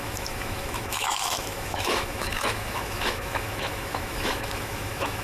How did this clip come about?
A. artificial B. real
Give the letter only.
A